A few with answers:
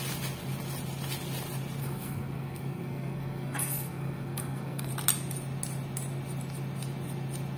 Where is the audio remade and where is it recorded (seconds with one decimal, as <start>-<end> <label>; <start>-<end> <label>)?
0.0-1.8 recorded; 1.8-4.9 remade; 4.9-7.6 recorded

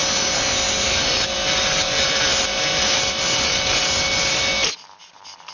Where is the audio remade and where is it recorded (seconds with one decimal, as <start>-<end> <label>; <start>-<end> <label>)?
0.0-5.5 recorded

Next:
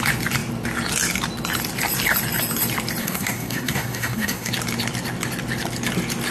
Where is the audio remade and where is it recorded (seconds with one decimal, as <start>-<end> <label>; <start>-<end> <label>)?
0.0-3.0 recorded; 3.0-4.5 remade; 4.5-6.3 recorded

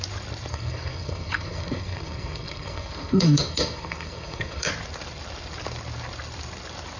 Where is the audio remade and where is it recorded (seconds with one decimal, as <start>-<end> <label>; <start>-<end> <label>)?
0.0-0.5 recorded; 0.5-4.7 remade; 4.7-7.0 recorded

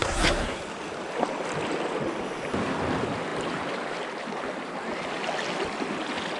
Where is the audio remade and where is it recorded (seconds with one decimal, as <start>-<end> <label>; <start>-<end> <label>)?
0.0-0.6 remade; 0.6-6.4 recorded

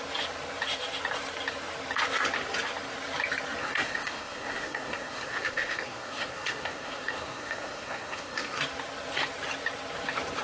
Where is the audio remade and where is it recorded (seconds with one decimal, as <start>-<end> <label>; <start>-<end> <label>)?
0.0-3.6 recorded; 3.6-8.6 remade; 8.6-10.4 recorded

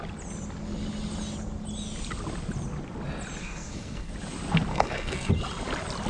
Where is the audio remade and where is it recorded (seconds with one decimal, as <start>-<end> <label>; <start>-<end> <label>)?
0.0-3.4 recorded; 3.4-4.1 remade; 4.1-4.7 recorded; 4.7-5.3 remade; 5.3-6.1 recorded

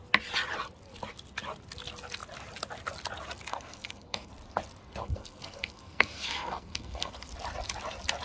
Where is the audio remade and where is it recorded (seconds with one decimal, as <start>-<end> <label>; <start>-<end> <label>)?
0.0-3.5 recorded; 3.5-4.3 remade; 4.3-5.0 recorded; 5.0-7.3 remade; 7.3-8.2 recorded